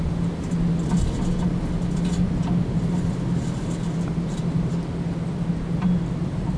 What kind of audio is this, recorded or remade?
recorded